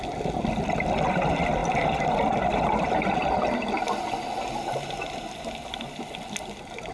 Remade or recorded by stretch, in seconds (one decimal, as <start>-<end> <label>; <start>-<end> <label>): 0.0-6.9 recorded